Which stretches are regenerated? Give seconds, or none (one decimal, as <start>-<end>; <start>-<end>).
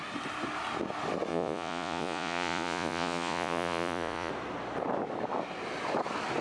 1.3-4.3